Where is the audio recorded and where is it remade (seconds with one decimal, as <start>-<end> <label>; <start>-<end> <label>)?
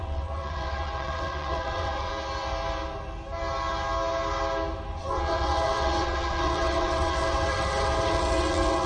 0.0-2.1 remade; 2.1-5.0 recorded; 5.0-8.9 remade